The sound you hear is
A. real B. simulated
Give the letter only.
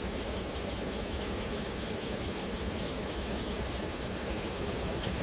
B